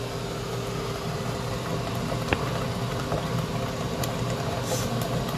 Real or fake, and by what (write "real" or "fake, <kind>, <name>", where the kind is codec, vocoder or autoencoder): real